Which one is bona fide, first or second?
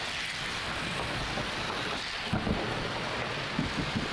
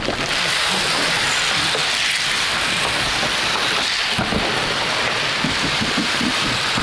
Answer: first